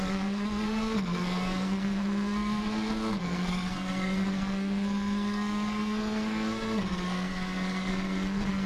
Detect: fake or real fake